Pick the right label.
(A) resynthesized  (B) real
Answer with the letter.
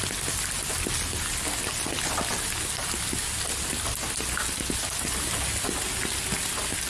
B